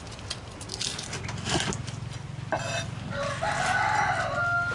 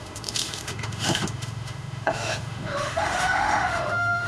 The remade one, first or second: second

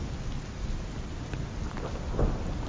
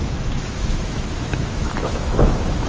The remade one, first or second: second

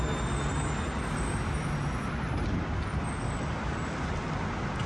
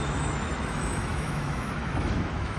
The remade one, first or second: second